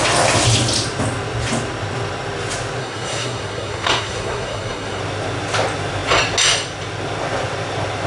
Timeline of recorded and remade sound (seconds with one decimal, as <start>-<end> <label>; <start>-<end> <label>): 0.0-2.8 recorded; 2.8-5.0 remade; 5.0-8.1 recorded